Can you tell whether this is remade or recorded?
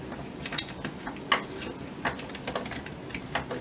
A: recorded